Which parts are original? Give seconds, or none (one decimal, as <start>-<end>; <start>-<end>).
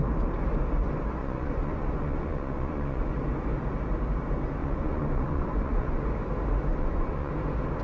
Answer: 0.0-1.2; 3.1-4.6; 6.0-6.7; 7.3-7.8